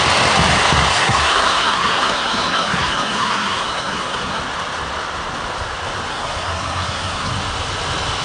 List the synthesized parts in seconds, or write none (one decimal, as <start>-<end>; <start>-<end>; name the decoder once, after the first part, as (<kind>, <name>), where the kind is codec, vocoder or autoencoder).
0.9-4.4 (codec, SNAC); 6.1-7.3